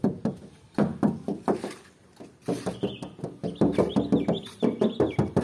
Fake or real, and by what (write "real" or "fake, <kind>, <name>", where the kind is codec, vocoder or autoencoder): real